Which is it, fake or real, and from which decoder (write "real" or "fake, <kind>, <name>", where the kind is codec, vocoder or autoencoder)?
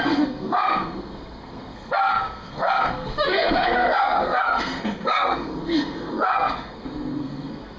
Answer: fake, codec, SNAC